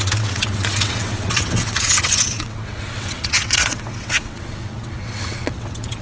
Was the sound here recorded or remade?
remade